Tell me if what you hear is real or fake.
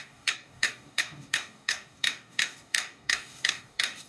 fake